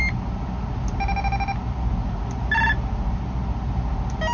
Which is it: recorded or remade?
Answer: recorded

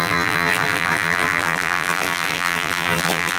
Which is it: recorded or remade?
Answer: remade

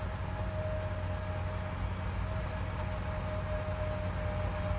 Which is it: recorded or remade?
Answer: recorded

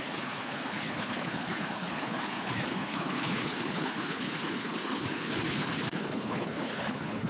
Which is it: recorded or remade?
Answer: remade